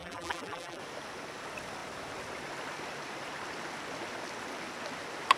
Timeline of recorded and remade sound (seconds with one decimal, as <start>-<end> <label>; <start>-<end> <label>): 0.0-0.8 remade; 0.8-5.4 recorded